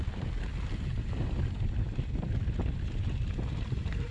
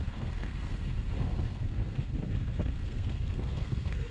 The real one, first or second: first